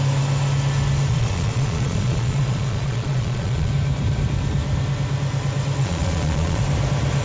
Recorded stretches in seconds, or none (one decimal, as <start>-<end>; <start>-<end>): 0.0-1.1; 3.7-5.8; 6.6-7.2